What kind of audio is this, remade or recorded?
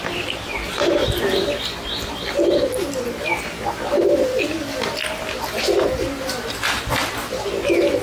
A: remade